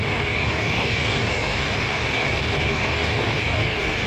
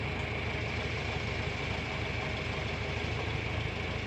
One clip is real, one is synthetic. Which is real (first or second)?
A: second